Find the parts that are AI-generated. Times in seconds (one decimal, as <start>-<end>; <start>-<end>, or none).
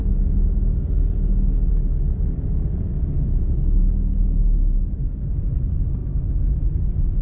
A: 6.0-6.6